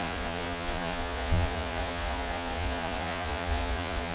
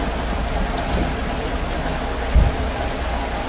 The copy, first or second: first